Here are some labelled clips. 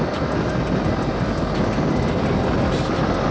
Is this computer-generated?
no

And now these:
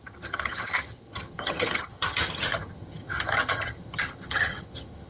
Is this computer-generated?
yes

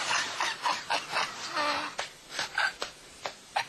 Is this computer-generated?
no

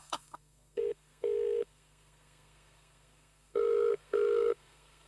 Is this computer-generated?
yes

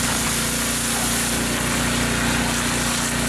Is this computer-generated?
no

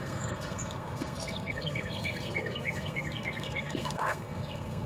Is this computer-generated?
yes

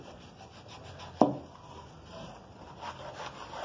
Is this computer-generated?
no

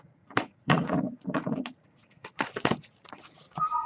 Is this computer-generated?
yes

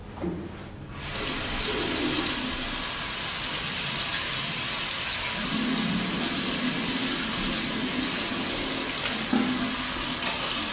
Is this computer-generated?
no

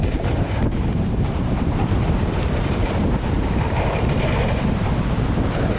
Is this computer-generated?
yes